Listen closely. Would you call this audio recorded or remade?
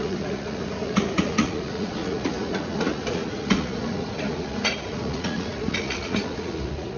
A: remade